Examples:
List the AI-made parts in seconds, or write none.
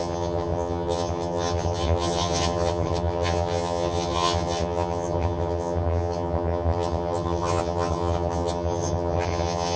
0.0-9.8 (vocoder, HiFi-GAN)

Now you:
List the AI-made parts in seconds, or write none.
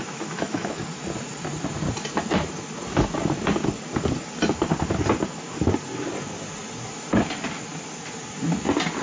0.0-0.7 (autoencoder, DAC-VAE)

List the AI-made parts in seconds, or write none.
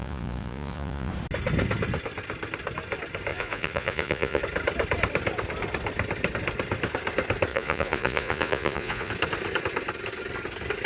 0.0-1.1 (vocoder, Vocos); 3.3-4.4; 7.5-9.1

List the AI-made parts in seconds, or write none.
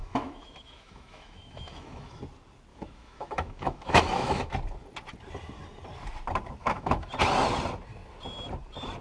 0.0-2.2 (autoencoder, DAC-VAE); 2.7-4.5; 6.6-7.1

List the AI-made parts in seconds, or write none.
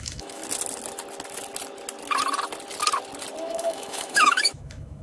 0.0-0.4 (autoencoder, DAC-VAE); 3.4-5.0